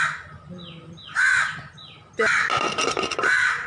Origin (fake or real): real